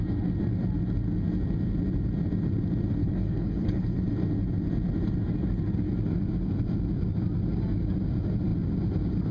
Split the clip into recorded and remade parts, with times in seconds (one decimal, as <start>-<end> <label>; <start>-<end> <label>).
0.0-3.0 recorded; 3.0-4.0 remade; 4.0-9.3 recorded